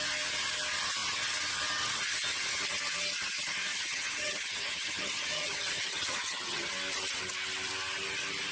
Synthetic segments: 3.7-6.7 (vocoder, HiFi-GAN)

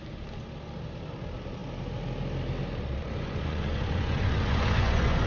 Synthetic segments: 3.0-5.3 (vocoder, Vocos)

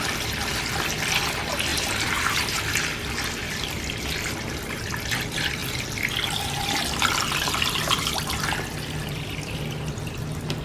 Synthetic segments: 1.7-2.6 (vocoder, BigVGAN v2)

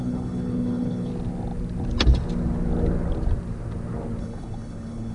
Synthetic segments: 0.0-1.1 (codec, HILCodec); 4.2-5.1

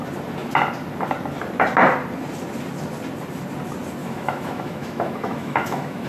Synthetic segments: 4.0-6.1 (autoencoder, DAC-VAE)

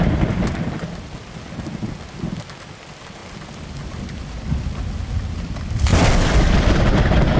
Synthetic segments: none

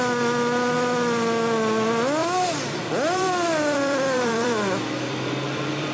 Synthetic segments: 2.2-5.9 (vocoder, BigVGAN v2)

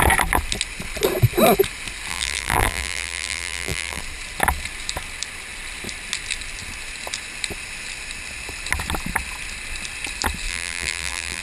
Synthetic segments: 2.1-4.0 (vocoder, BigVGAN v2); 10.5-11.4